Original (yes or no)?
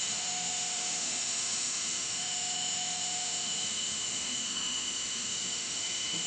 no